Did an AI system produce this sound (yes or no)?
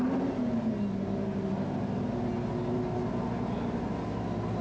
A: no